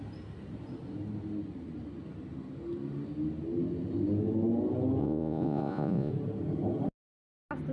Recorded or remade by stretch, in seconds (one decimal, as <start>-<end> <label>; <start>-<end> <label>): 0.0-5.0 recorded; 5.0-6.1 remade; 6.1-7.7 recorded